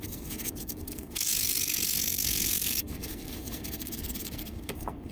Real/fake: fake